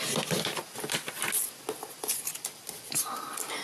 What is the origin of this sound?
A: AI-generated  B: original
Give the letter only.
B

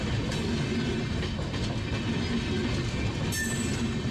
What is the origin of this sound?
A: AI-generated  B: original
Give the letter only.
B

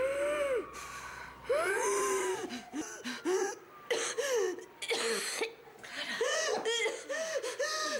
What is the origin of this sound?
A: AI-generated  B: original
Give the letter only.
B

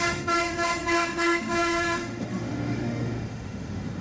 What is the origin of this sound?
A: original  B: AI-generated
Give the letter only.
B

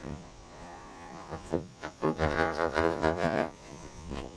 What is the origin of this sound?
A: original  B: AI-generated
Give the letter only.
B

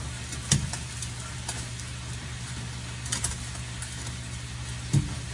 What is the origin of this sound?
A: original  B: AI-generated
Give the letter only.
A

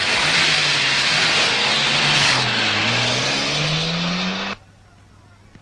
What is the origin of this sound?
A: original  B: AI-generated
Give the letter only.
A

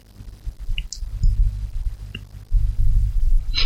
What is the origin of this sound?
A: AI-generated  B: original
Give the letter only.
B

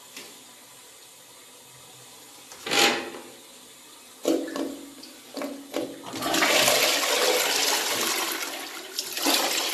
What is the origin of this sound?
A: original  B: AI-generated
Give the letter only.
A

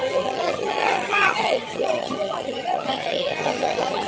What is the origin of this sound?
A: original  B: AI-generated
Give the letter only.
B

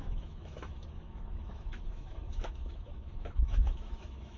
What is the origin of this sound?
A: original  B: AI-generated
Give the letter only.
B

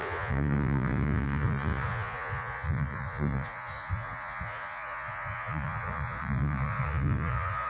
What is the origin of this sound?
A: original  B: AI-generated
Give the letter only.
B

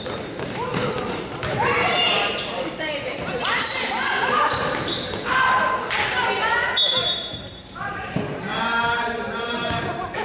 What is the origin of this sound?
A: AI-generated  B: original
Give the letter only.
A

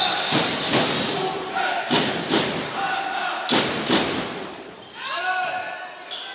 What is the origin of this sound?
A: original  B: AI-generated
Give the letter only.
A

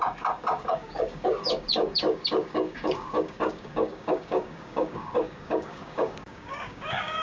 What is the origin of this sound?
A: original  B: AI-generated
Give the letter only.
B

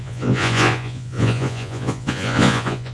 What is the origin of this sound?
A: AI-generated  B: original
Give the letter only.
A